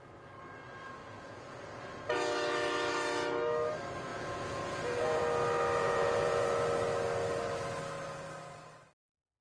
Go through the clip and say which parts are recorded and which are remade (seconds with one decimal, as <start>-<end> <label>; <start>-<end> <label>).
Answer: 0.0-1.0 recorded; 1.0-1.8 remade; 1.8-4.1 recorded; 4.1-5.2 remade; 5.2-5.8 recorded; 5.8-6.5 remade; 6.5-9.4 recorded